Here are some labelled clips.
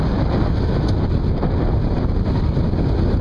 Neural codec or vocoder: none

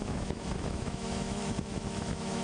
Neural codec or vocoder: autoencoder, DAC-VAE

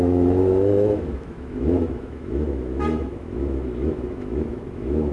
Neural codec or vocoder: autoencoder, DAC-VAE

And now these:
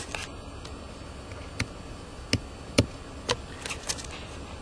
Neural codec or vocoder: none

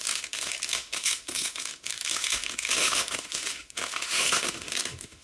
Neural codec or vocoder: autoencoder, DAC-VAE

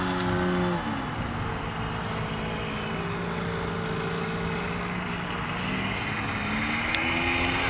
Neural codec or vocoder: none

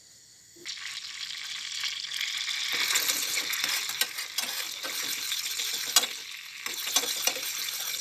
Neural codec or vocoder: none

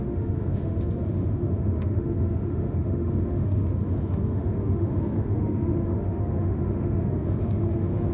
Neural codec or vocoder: autoencoder, DAC-VAE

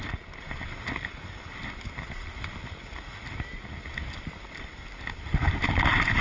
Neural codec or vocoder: none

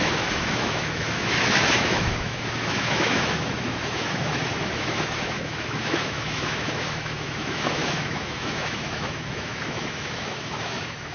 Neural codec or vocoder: autoencoder, DAC-VAE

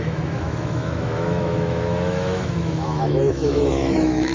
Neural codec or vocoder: autoencoder, DAC-VAE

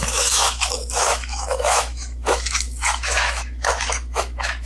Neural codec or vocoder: autoencoder, DAC-VAE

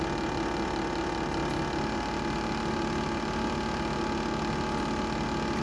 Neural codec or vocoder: none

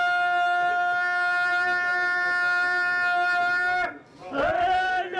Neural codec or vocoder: none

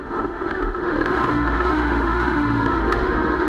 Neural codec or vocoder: autoencoder, DAC-VAE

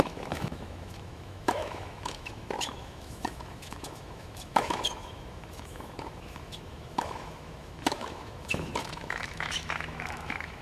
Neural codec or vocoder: autoencoder, DAC-VAE